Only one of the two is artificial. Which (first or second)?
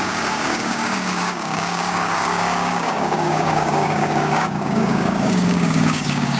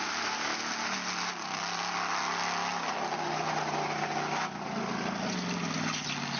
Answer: first